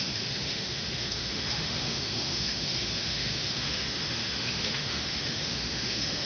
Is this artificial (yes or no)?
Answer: yes